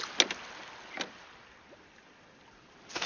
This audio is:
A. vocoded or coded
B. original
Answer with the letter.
B